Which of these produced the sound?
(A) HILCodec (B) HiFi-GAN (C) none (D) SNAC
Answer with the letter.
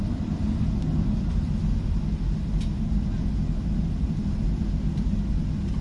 C